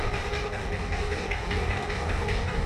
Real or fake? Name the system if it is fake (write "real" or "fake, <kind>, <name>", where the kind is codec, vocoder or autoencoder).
fake, codec, DAC